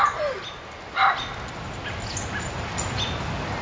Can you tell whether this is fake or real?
real